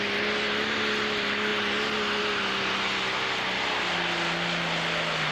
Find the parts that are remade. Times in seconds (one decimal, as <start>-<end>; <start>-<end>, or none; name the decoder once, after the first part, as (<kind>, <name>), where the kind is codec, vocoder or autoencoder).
none

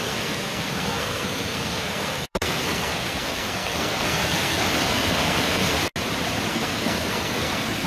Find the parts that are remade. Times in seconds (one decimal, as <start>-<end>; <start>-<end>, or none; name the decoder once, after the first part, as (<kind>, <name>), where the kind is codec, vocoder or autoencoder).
0.0-5.8 (codec, SNAC); 6.5-7.9

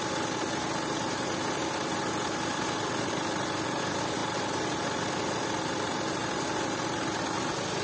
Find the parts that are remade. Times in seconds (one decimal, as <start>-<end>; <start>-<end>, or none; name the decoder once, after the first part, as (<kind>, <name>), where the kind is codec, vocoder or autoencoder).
none

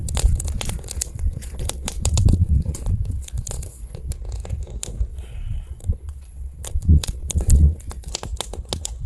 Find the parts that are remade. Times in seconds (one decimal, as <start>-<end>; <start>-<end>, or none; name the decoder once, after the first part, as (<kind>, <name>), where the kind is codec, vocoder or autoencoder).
0.0-4.1 (vocoder, Vocos); 5.1-8.1

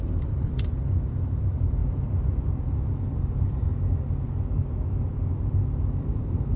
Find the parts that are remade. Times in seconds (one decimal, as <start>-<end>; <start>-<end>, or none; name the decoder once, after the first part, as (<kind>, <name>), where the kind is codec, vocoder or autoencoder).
0.0-1.8 (vocoder, BigVGAN v2); 2.6-3.7; 6.0-6.6

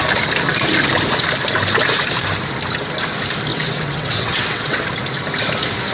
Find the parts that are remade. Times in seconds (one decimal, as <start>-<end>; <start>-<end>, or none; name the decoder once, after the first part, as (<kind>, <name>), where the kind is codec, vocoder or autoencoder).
3.5-4.8 (vocoder, WaveNeXt)

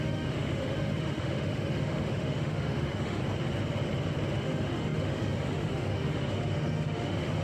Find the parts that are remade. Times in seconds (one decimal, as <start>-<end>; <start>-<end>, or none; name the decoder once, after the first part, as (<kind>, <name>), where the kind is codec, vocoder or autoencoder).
0.0-3.2 (autoencoder, DAC-VAE); 4.3-7.4

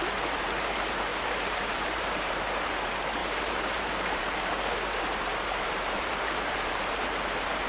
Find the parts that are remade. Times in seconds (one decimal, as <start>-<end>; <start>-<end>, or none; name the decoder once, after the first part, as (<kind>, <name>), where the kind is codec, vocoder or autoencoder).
1.1-2.4 (vocoder, BigVGAN v2); 3.2-7.7